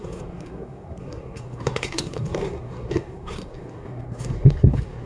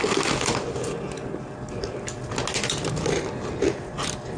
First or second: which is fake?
first